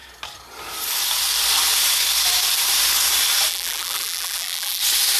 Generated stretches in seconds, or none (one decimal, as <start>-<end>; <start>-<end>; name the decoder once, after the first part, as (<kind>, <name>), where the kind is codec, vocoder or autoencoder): 3.5-4.8 (vocoder, BigVGAN v2)